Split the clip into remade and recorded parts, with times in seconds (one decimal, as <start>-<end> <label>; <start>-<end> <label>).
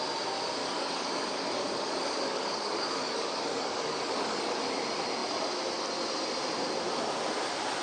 0.0-0.6 recorded; 0.6-4.6 remade; 4.6-7.8 recorded